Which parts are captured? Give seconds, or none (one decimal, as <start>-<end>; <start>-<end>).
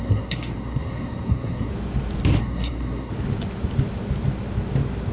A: 1.7-2.4; 3.1-5.1